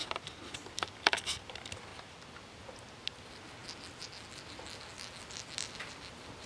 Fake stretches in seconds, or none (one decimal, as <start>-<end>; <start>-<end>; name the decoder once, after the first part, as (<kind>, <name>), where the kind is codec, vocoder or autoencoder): 0.0-1.0 (vocoder, BigVGAN v2); 1.9-2.5